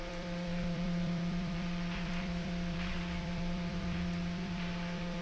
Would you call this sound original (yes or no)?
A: no